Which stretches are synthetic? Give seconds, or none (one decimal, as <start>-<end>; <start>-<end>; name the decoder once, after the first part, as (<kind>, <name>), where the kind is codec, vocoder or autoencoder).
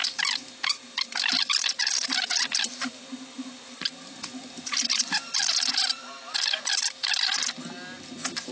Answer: 2.7-4.3 (vocoder, BigVGAN v2)